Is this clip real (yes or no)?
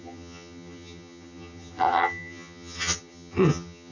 no